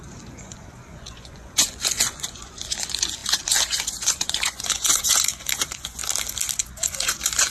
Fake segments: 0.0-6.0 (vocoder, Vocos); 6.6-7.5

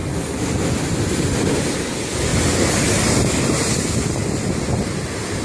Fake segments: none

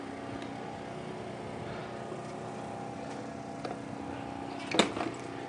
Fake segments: none

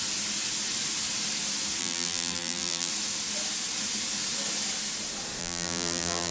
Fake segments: 1.8-2.9 (vocoder, BigVGAN v2); 5.4-6.3